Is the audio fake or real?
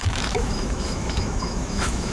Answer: fake